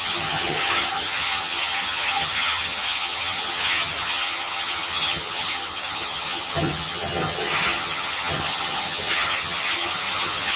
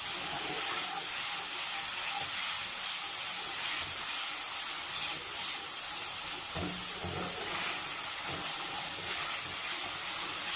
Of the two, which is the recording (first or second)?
second